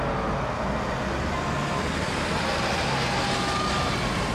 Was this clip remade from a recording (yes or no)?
no